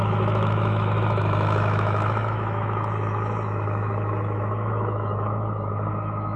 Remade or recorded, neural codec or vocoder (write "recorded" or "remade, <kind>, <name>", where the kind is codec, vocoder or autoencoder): remade, autoencoder, DAC-VAE